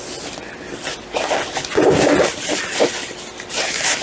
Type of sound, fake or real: real